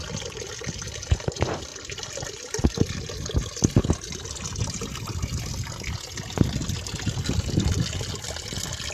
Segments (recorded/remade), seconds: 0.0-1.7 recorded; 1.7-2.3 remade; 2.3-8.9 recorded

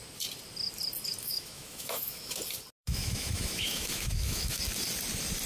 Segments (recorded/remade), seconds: 0.0-1.2 recorded; 1.2-2.4 remade; 2.4-2.8 recorded; 2.8-4.6 remade; 4.6-5.5 recorded

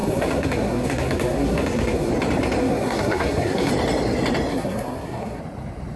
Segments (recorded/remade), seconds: 0.0-2.1 remade; 2.1-2.6 recorded; 2.6-3.7 remade; 3.7-4.5 recorded; 4.5-5.4 remade; 5.4-6.0 recorded

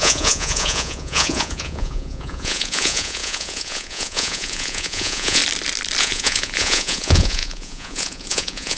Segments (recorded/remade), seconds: 0.0-5.4 remade; 5.4-6.0 recorded; 6.0-8.8 remade

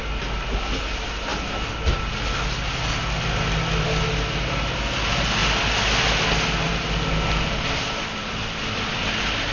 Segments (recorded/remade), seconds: 0.0-8.2 recorded; 8.2-9.5 remade

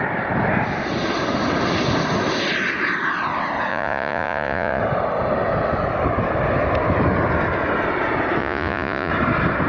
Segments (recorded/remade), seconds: 0.0-3.7 recorded; 3.7-4.8 remade; 4.8-8.4 recorded; 8.4-9.1 remade; 9.1-9.7 recorded